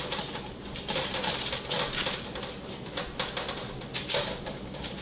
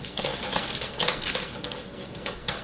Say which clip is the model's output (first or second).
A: second